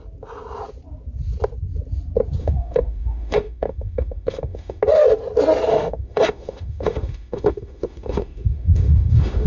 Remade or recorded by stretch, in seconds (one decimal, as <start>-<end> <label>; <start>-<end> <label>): 0.0-2.4 recorded; 2.4-4.8 remade; 4.8-5.7 recorded; 5.7-9.5 remade